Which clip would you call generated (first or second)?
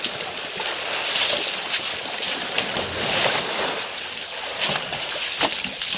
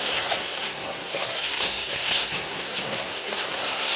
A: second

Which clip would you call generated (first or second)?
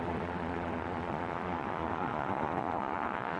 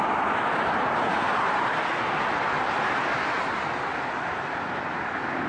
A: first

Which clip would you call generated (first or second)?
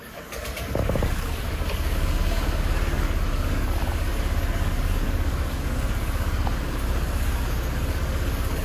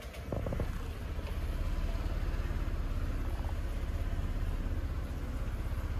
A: first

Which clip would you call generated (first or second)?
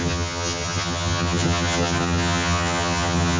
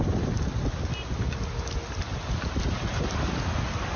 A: first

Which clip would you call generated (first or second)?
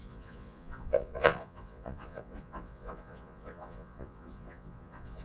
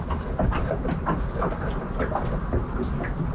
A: first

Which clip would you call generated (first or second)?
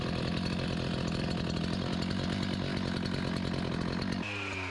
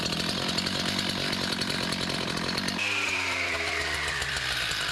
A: second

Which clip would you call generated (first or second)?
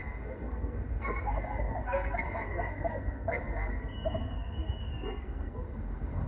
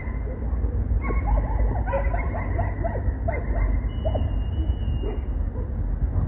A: first